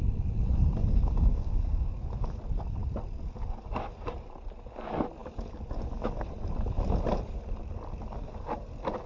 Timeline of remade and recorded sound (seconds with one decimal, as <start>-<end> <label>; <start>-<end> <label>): 0.0-0.8 recorded; 0.8-1.9 remade; 1.9-9.1 recorded